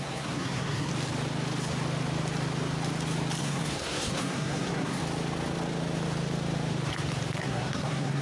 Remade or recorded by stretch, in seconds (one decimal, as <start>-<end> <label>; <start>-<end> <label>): 0.0-0.9 remade; 0.9-3.4 recorded; 3.4-5.0 remade; 5.0-7.4 recorded; 7.4-8.2 remade